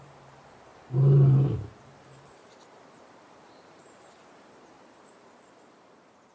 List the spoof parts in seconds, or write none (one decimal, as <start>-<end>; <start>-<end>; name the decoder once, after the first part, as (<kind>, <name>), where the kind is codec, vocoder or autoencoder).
0.0-6.3 (vocoder, BigVGAN v2)